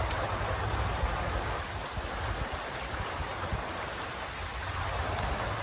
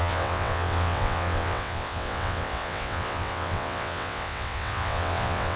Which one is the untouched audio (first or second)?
first